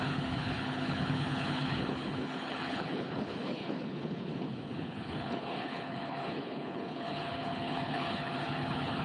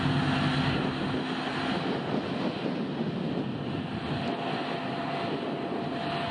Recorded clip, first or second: second